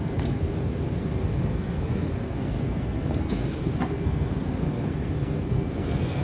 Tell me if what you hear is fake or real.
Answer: fake